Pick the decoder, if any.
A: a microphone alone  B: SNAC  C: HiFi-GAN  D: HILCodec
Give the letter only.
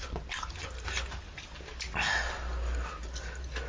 A